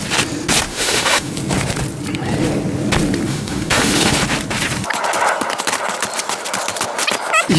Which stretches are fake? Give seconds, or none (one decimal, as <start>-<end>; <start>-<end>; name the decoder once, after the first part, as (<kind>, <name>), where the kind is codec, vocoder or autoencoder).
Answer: 0.7-1.3 (autoencoder, DAC-VAE); 3.3-4.1